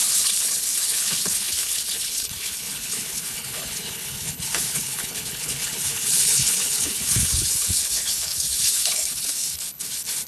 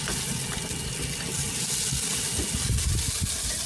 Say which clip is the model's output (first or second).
first